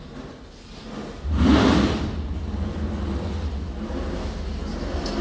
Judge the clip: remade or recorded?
recorded